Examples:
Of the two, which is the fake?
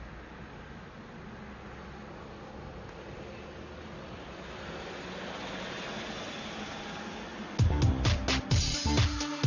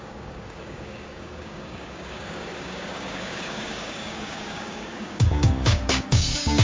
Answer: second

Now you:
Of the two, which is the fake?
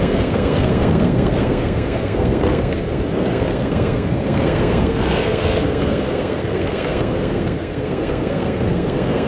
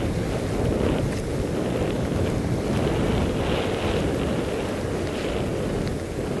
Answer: first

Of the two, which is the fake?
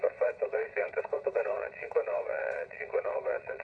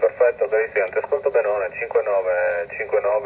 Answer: first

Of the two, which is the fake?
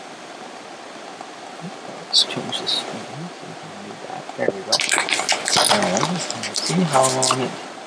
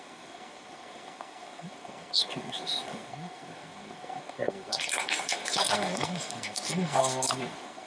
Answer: second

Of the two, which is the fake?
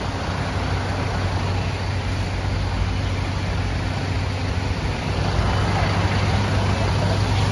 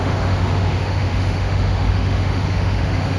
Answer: second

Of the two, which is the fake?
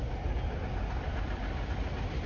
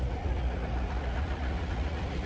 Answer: second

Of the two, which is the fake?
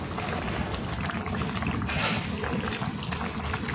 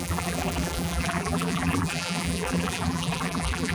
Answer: second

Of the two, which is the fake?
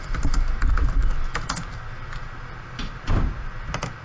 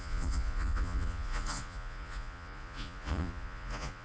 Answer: second